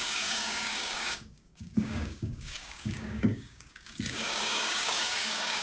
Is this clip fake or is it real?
fake